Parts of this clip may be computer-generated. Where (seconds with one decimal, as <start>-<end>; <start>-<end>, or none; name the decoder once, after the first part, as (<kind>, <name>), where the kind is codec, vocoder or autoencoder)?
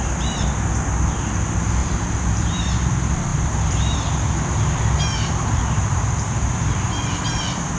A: 1.8-2.7 (vocoder, BigVGAN v2); 3.3-7.8